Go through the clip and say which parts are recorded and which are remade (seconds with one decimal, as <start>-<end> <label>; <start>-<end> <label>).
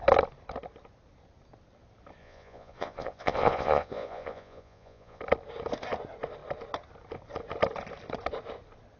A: 0.0-2.2 recorded; 2.2-5.2 remade; 5.2-9.0 recorded